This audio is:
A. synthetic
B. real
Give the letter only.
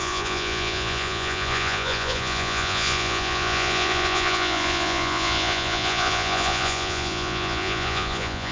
A